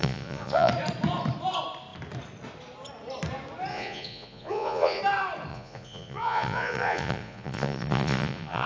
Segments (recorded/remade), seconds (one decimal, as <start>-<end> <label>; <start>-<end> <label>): 0.0-0.7 remade; 0.7-3.7 recorded; 3.7-5.0 remade; 5.0-5.5 recorded; 5.5-8.7 remade